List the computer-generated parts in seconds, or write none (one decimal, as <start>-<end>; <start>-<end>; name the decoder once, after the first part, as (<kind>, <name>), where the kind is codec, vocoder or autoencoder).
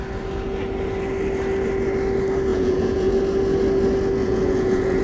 2.5-3.1 (vocoder, Vocos); 4.2-5.0